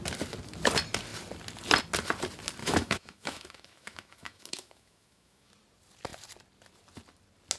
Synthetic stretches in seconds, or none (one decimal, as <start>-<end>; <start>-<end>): 2.6-5.5